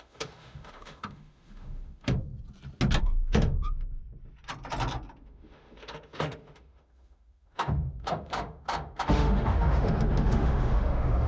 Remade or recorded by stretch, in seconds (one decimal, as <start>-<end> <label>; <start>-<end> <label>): 0.0-2.3 remade; 2.3-3.0 recorded; 3.0-4.0 remade; 4.0-5.2 recorded; 5.2-11.3 remade